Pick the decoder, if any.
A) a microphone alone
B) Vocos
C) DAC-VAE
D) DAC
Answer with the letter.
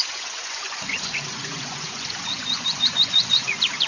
B